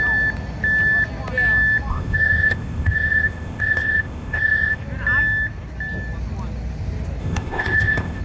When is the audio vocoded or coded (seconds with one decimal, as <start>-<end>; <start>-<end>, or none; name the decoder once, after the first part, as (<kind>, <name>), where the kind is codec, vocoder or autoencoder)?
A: 1.9-4.8 (codec, ZipCodec); 7.2-8.2